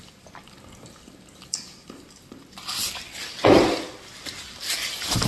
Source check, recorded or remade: recorded